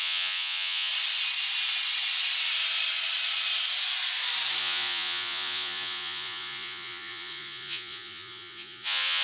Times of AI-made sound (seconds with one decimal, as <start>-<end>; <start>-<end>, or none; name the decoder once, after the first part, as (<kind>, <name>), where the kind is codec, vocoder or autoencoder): 0.0-0.9 (vocoder, Vocos); 4.6-9.2